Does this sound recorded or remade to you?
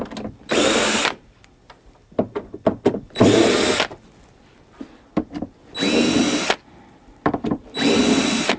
recorded